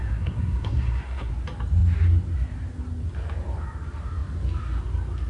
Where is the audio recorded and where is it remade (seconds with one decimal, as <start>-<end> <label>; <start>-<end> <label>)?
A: 0.0-1.3 remade; 1.3-5.3 recorded